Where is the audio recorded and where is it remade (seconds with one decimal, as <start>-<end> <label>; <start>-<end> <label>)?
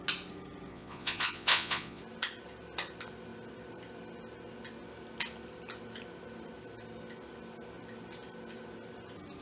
0.0-0.7 recorded; 0.7-2.0 remade; 2.0-9.4 recorded